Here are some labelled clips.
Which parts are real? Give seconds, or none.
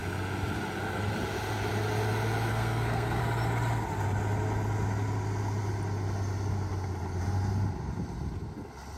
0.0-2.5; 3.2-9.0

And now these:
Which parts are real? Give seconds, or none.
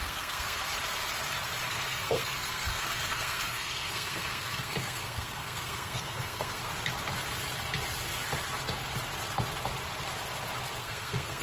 0.6-1.7; 6.7-10.8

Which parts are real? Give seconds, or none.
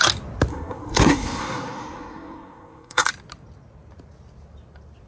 0.0-0.5; 3.1-5.1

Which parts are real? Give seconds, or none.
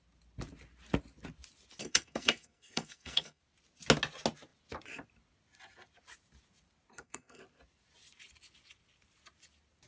0.0-1.8; 3.4-6.9; 7.4-9.9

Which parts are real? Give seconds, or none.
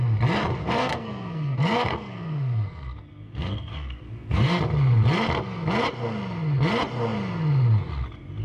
0.0-0.6; 4.6-8.4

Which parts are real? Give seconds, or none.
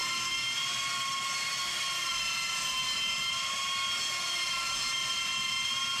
0.0-6.0